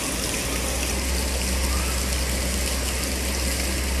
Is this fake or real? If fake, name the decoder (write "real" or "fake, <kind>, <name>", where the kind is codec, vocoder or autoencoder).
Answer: real